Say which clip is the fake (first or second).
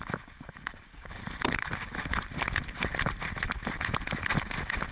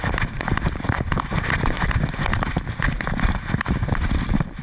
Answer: second